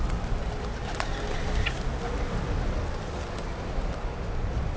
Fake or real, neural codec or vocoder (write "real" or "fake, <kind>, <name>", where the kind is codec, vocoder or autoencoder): real